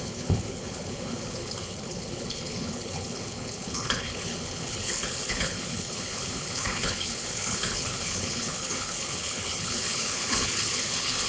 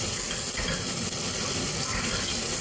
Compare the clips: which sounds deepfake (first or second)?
first